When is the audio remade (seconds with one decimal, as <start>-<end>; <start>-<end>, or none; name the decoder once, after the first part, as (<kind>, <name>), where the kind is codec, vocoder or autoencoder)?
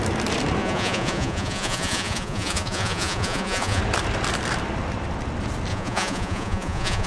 0.6-3.8 (vocoder, Vocos); 5.7-7.1